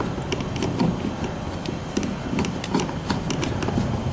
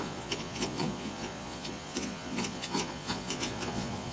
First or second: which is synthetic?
second